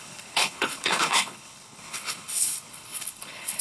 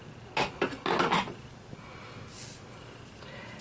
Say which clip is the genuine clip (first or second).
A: second